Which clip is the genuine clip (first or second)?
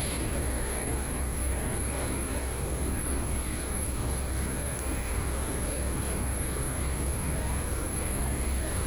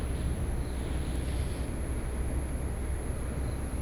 second